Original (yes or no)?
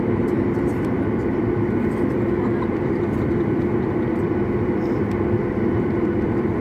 no